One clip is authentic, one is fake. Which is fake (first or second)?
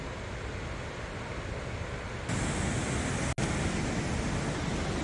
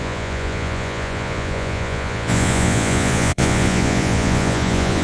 second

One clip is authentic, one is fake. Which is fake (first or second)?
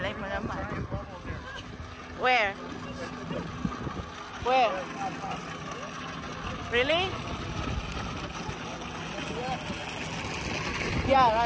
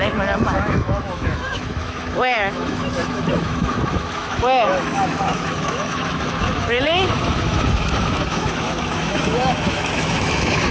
second